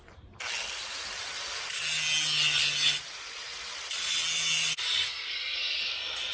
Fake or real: real